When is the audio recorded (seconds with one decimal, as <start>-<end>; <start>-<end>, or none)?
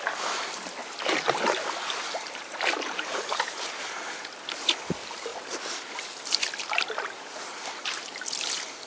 0.0-0.8; 4.0-8.9